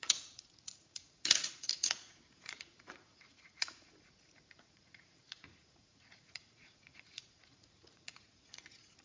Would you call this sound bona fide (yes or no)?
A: no